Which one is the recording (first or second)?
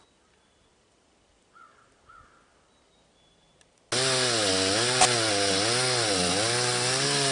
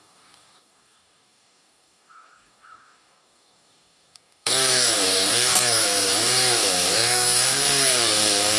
first